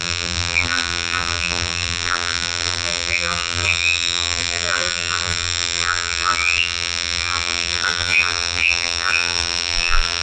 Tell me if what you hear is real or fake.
fake